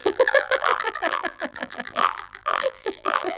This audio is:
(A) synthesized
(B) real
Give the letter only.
A